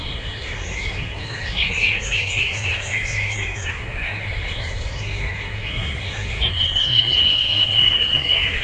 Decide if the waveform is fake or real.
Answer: fake